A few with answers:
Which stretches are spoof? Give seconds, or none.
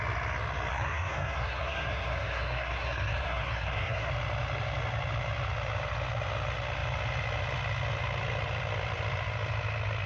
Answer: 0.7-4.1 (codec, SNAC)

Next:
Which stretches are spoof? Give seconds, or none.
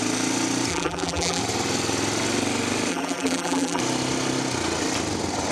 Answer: 0.7-1.4 (vocoder, BigVGAN v2); 2.9-3.8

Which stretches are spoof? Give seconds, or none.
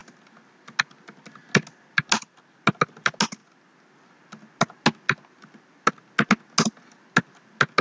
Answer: none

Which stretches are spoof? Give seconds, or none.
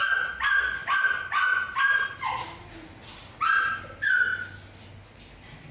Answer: none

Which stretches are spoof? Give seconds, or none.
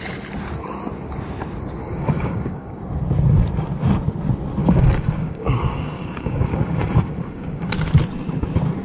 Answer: 1.8-2.8 (codec, DAC); 4.6-7.7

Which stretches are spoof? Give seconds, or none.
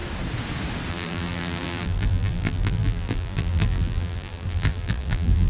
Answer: 0.9-5.5 (vocoder, BigVGAN v2)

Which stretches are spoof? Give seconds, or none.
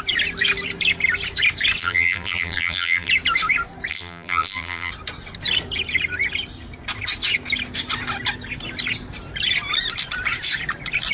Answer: 1.8-3.1 (vocoder, BigVGAN v2); 3.9-4.9